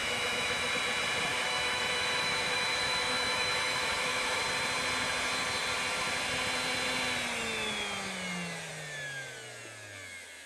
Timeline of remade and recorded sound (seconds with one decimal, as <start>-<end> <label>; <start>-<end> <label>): 0.0-0.7 remade; 0.7-1.3 recorded; 1.3-4.4 remade; 4.4-10.5 recorded